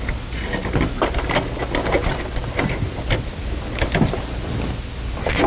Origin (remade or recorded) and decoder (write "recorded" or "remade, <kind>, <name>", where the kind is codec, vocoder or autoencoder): recorded